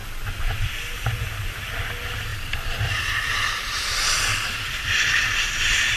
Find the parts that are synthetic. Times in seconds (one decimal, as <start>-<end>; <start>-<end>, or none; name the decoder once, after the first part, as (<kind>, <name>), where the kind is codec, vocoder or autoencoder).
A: 0.0-0.7 (vocoder, BigVGAN v2); 2.3-3.1; 4.3-4.9